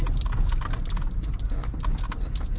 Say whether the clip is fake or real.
real